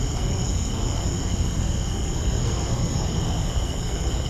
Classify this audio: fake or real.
fake